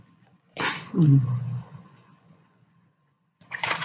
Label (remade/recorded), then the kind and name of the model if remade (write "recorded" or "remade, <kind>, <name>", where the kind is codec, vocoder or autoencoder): remade, vocoder, Vocos